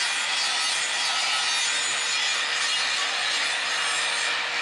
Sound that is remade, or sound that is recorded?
recorded